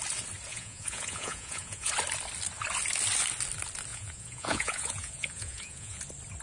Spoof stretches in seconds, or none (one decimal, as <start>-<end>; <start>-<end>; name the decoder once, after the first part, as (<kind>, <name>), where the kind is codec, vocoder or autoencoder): 0.5-1.9 (vocoder, Vocos); 3.9-6.0